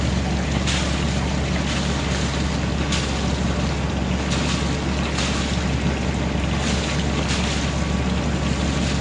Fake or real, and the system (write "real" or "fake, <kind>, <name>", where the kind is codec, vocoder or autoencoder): real